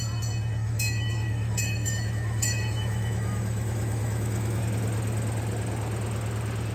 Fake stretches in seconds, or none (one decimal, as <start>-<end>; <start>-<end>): 0.6-4.6